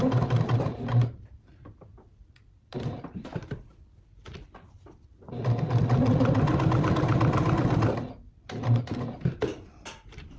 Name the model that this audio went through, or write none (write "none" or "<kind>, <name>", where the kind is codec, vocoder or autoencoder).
none